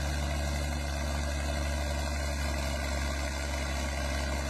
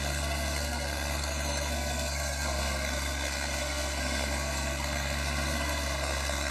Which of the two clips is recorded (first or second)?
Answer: first